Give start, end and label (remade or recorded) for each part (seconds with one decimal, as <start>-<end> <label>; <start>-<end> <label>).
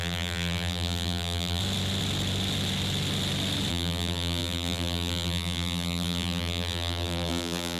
0.0-1.6 remade; 1.6-3.7 recorded; 3.7-7.8 remade